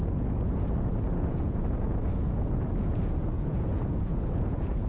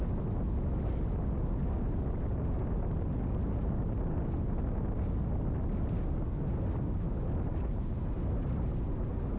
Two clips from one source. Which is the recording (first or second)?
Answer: second